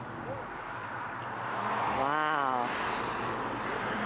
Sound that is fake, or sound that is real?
real